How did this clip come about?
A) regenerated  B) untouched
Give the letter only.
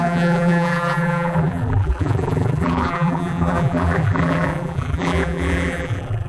A